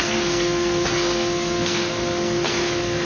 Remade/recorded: remade